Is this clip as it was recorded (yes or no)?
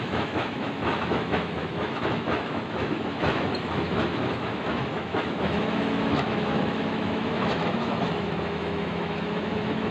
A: no